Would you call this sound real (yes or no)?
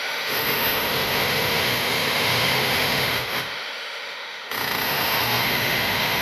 no